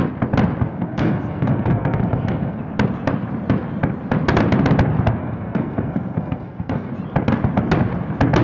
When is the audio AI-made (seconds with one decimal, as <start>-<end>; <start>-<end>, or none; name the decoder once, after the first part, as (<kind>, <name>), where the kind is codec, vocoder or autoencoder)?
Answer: 0.7-2.6 (codec, SNAC); 5.2-6.9